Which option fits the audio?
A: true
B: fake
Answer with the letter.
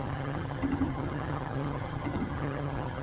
B